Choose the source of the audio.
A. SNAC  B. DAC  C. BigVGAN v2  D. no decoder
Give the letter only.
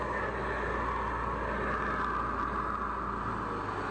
D